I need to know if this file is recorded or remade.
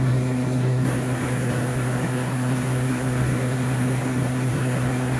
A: remade